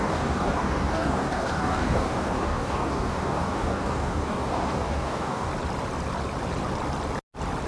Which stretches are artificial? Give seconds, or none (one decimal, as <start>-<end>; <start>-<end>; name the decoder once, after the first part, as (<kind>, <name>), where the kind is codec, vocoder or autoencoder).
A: 0.0-5.5 (codec, DAC)